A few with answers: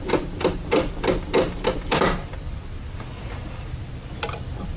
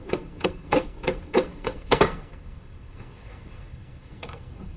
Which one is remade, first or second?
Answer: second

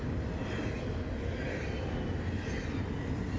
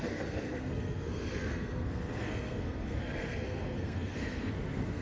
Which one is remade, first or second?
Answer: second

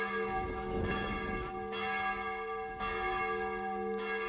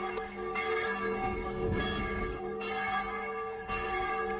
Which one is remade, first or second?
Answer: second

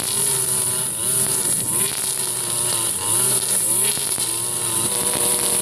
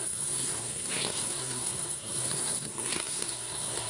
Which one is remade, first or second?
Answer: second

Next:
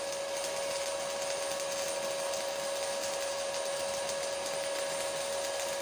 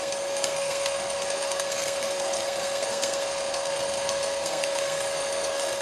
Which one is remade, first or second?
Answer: second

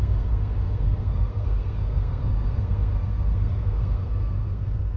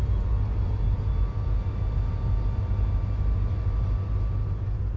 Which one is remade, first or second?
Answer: first